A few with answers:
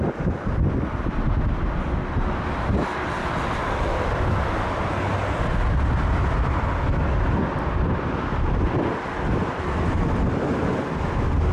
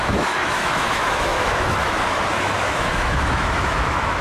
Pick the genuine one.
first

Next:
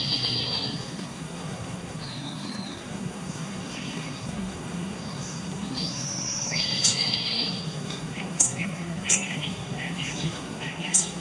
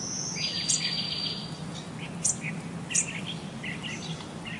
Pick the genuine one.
second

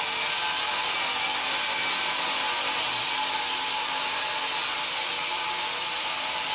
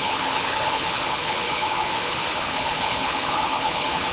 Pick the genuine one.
first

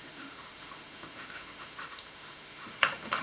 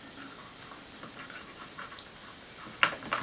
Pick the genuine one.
second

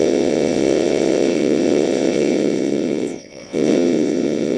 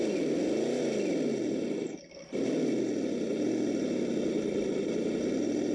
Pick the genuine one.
second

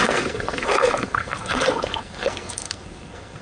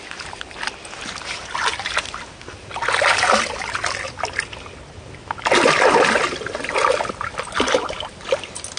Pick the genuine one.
second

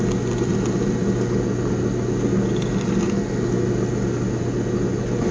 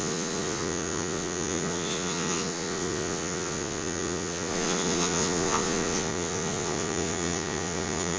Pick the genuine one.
first